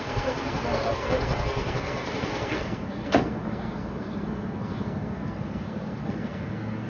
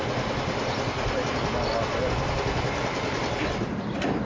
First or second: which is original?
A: second